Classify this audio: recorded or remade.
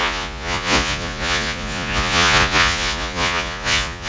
remade